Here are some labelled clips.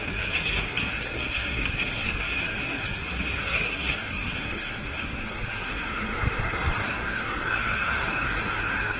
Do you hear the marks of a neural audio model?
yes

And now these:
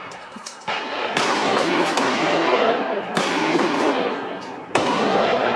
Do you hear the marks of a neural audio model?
yes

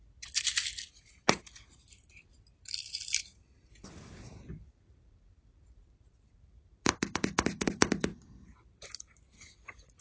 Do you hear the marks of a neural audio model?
yes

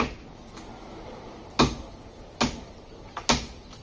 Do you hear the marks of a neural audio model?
no